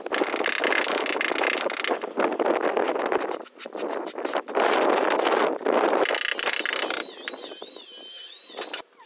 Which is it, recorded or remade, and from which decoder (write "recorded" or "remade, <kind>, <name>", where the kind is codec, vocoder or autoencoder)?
recorded